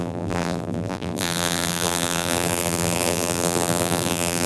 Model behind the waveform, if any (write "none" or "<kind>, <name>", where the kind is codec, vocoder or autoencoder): vocoder, BigVGAN v2